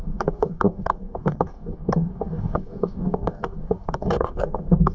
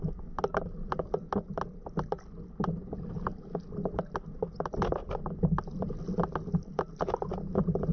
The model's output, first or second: first